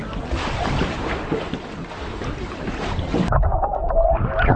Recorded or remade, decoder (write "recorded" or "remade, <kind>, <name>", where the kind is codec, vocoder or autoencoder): recorded